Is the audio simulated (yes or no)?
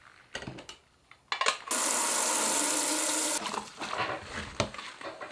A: no